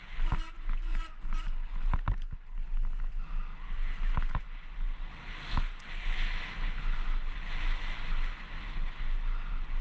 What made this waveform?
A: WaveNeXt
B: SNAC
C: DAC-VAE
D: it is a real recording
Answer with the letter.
D